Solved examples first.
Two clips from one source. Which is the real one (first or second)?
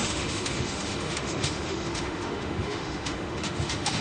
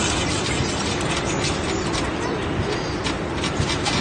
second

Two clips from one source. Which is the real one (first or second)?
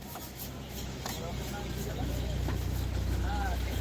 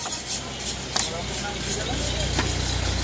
second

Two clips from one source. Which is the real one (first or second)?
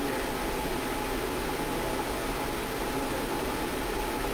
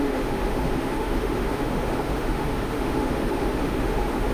first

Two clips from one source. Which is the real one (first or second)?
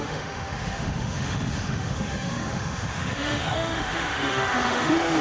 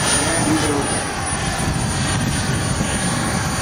second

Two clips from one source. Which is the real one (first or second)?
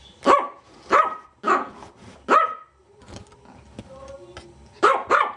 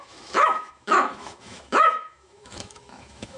first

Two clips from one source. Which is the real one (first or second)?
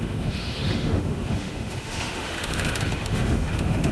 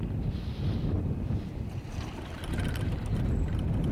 second